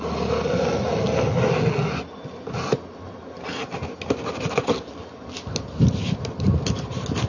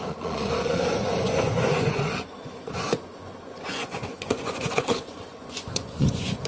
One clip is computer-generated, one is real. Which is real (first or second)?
first